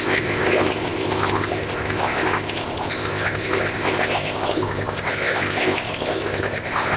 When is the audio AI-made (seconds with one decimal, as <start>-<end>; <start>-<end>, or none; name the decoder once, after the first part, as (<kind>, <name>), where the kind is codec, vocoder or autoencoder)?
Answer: 0.0-7.0 (codec, ZipCodec)